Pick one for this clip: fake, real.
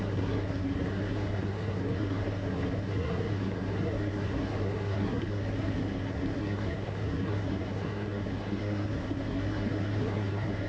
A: fake